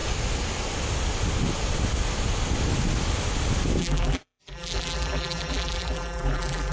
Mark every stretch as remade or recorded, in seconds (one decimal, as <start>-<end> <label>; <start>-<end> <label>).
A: 0.0-3.8 recorded; 3.8-6.7 remade